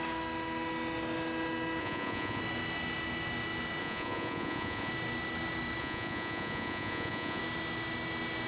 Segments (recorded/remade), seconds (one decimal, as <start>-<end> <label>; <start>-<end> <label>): 0.0-1.8 recorded; 1.8-2.4 remade; 2.4-3.8 recorded; 3.8-4.9 remade; 4.9-5.8 recorded; 5.8-7.4 remade; 7.4-8.5 recorded